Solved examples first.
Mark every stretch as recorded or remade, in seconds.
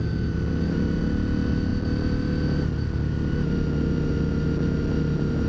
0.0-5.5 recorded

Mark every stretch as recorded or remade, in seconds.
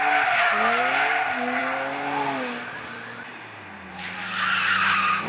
0.0-5.3 recorded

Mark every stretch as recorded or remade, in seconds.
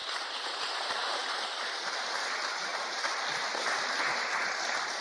0.0-1.9 remade; 1.9-5.0 recorded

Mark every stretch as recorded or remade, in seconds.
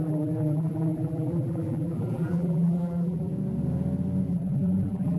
0.0-3.3 remade; 3.3-4.3 recorded; 4.3-5.2 remade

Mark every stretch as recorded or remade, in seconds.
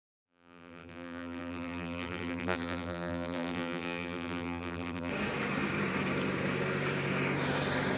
0.0-5.1 remade; 5.1-8.0 recorded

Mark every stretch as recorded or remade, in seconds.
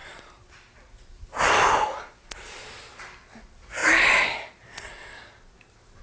0.0-2.7 remade; 2.7-6.0 recorded